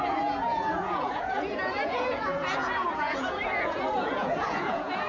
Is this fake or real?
fake